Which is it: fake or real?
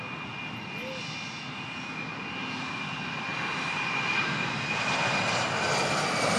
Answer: real